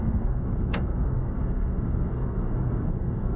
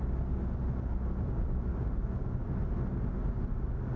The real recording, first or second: second